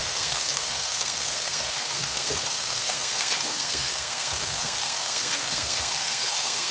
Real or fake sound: fake